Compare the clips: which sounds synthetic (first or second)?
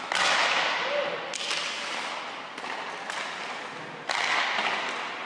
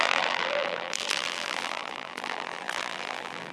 second